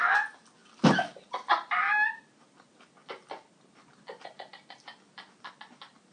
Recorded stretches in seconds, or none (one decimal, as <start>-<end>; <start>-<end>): 0.0-6.1